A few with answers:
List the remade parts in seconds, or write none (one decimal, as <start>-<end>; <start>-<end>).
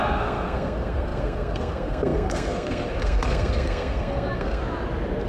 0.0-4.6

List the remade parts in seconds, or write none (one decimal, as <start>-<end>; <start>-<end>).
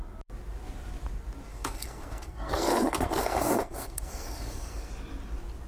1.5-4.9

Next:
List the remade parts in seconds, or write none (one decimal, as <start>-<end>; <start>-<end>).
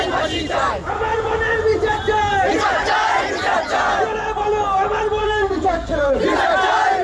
5.2-6.2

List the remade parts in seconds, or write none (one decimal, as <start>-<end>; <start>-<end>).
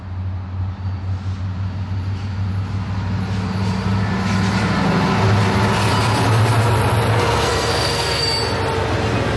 7.1-8.2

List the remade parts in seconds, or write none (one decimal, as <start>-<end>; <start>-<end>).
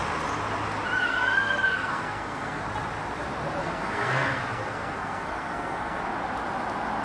1.0-2.6; 3.6-6.0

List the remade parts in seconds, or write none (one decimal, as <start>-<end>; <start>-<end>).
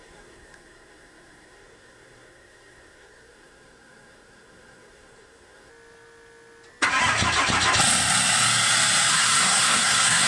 0.0-5.7; 9.1-10.3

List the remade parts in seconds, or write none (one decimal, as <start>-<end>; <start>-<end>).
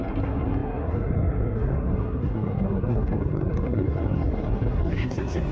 0.0-5.5